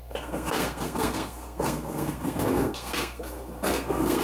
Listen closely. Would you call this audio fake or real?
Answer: fake